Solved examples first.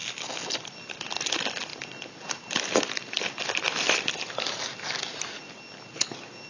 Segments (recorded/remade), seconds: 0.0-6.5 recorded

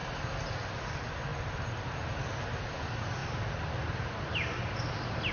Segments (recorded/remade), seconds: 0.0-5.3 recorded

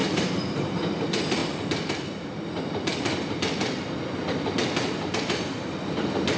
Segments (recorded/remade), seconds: 0.0-1.4 remade; 1.4-5.2 recorded; 5.2-6.4 remade